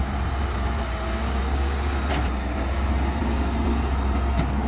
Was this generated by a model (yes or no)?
no